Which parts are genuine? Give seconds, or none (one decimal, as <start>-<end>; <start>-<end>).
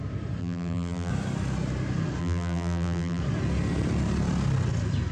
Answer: 0.0-0.4; 1.1-2.2; 3.2-5.1